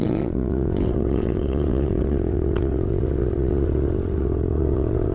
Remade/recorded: remade